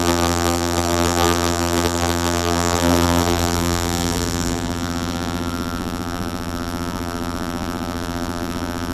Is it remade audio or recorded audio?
remade